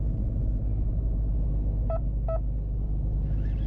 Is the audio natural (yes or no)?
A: yes